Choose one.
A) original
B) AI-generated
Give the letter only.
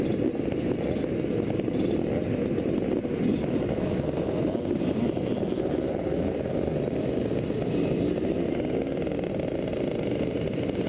A